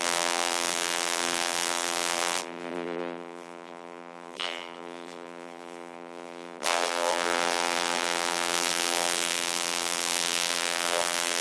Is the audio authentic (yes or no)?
no